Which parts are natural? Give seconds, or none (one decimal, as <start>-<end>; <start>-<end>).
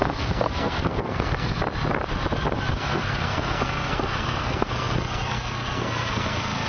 1.6-2.7